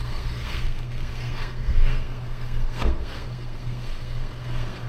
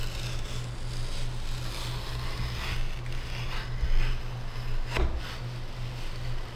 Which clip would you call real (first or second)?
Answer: second